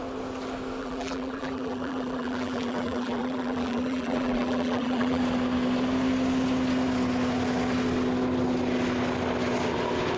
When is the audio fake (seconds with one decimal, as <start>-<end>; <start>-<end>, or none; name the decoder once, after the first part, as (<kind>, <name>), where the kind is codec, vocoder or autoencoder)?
0.8-5.2 (vocoder, BigVGAN v2)